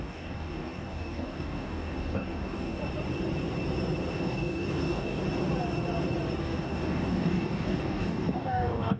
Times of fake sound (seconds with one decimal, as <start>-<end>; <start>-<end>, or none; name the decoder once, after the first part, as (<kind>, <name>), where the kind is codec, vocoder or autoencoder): 0.0-2.8 (codec, DAC); 4.1-5.2; 6.4-9.0